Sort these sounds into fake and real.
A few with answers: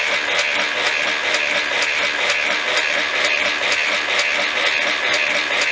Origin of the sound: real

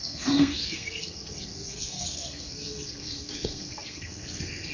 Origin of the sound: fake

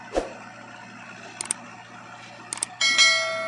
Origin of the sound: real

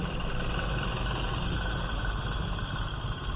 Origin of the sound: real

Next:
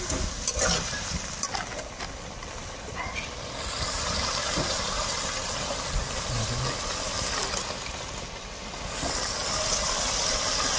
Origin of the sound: real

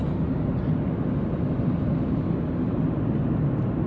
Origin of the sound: real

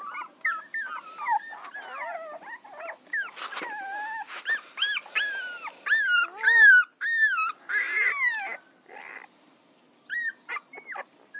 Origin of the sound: real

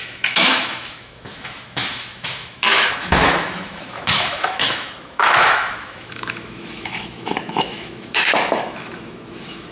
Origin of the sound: fake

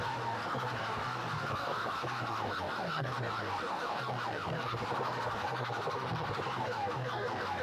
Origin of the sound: fake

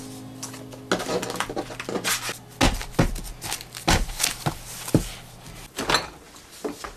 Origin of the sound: real